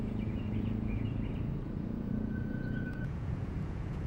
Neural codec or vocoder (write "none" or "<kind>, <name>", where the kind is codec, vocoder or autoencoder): vocoder, Vocos